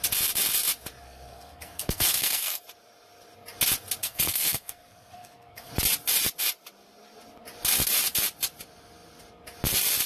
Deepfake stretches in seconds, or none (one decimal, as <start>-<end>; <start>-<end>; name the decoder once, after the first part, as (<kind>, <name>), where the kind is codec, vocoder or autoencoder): 1.0-2.6 (codec, SNAC); 4.0-5.7